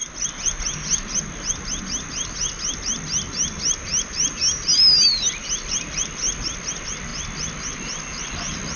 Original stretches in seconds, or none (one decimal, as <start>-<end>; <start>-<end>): 0.0-8.8